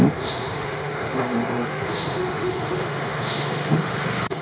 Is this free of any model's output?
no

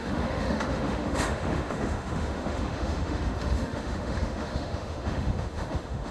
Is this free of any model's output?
no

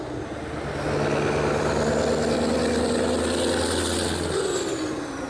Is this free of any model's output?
yes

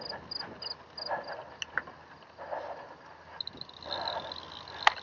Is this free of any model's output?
yes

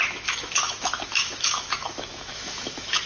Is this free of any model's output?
no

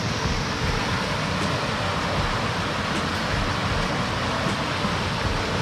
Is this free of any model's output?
yes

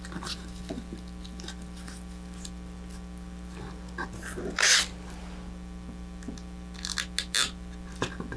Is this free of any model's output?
yes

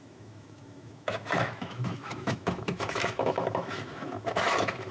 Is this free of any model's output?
no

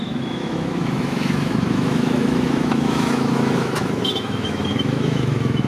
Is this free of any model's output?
no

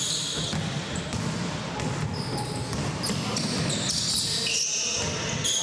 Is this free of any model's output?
yes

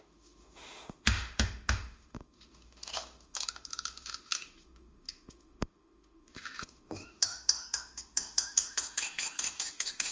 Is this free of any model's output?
no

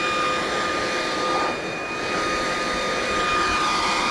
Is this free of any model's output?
yes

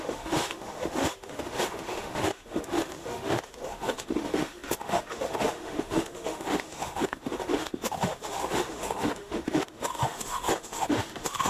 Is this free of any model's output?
no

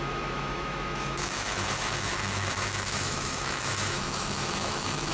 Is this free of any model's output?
no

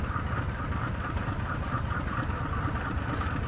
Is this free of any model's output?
yes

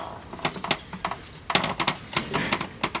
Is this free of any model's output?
yes